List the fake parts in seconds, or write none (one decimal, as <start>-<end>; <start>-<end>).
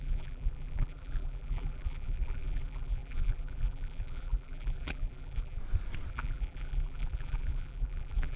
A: 0.0-5.6; 6.1-8.4